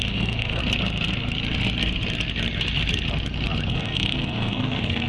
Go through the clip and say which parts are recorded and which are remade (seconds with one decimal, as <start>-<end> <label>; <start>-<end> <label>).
0.0-0.6 remade; 0.6-3.7 recorded; 3.7-5.1 remade